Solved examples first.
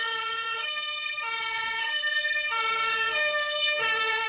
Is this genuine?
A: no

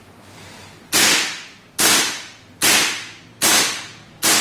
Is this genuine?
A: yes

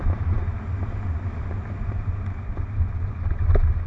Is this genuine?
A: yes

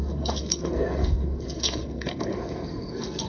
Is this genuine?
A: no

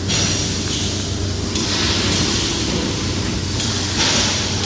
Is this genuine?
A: yes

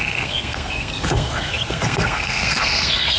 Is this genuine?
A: no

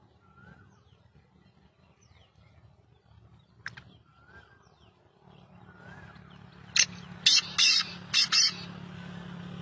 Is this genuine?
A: yes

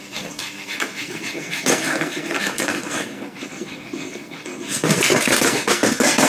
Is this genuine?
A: no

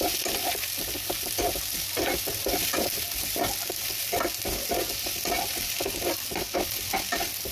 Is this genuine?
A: yes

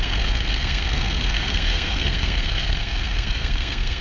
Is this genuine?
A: no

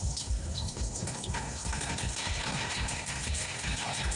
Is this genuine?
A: no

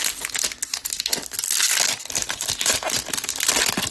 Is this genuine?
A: yes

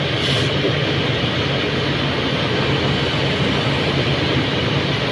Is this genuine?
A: yes